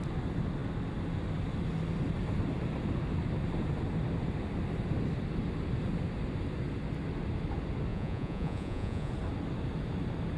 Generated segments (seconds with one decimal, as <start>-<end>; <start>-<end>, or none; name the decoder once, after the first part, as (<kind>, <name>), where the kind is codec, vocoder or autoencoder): 7.9-9.1 (vocoder, Vocos)